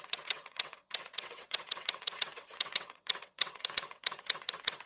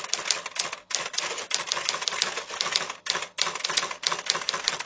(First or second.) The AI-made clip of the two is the first